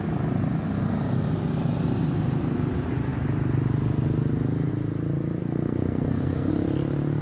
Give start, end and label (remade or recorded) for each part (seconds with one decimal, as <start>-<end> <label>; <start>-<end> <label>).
0.0-5.4 recorded; 5.4-6.5 remade; 6.5-7.2 recorded